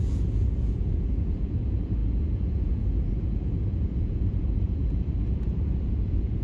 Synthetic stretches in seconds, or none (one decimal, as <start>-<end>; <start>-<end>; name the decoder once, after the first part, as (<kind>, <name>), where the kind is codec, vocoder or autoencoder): 0.0-6.4 (vocoder, Vocos)